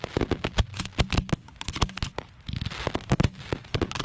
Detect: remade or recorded recorded